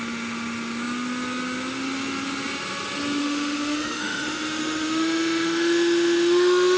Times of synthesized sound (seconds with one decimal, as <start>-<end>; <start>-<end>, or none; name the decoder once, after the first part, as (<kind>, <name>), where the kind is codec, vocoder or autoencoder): 3.2-6.8 (autoencoder, DAC-VAE)